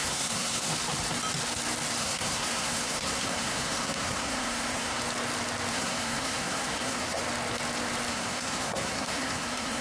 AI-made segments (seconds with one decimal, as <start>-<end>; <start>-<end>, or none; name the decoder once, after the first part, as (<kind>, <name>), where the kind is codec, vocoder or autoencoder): 0.0-0.7 (codec, SNAC); 2.0-5.0; 5.7-7.2; 8.1-9.8